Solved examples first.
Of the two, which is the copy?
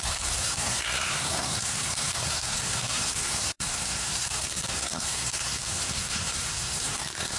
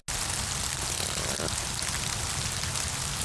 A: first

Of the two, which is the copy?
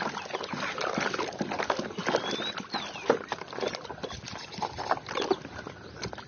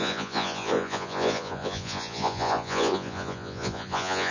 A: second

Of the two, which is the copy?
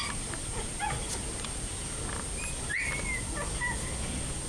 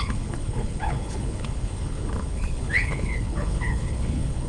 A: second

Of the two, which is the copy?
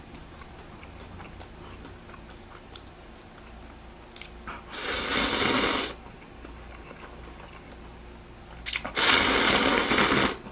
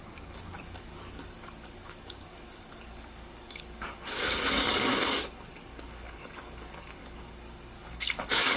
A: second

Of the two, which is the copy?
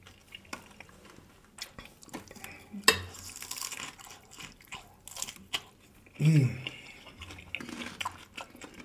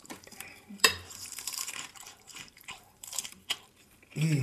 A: second